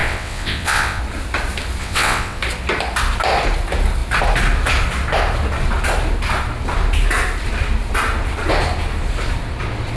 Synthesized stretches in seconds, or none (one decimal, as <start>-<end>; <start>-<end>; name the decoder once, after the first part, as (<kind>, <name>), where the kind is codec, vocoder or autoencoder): 0.0-1.0 (vocoder, WaveNeXt); 1.8-2.4